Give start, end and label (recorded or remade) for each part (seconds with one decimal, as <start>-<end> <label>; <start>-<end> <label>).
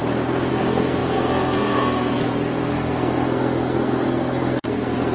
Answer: 0.0-0.5 recorded; 0.5-5.1 remade